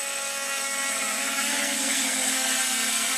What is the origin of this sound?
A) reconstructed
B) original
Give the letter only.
A